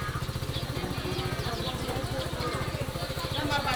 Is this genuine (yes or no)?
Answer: yes